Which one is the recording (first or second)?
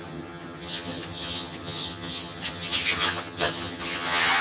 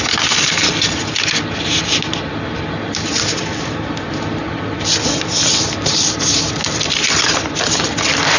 second